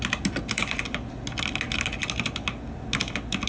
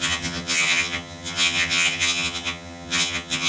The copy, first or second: second